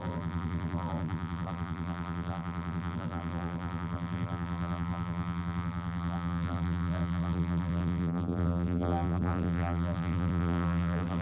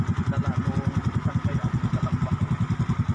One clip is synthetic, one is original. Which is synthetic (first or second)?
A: first